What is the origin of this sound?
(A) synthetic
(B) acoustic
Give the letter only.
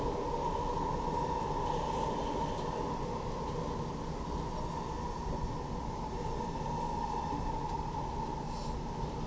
B